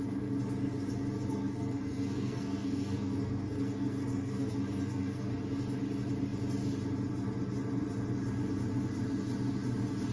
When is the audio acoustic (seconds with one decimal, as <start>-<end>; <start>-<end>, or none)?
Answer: 0.0-1.3; 5.3-10.1

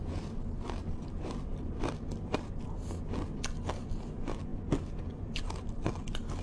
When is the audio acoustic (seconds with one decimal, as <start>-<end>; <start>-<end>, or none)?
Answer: 0.0-6.4

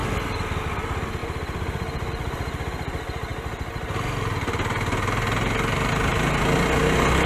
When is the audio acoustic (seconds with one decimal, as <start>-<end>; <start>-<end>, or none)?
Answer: 0.0-7.3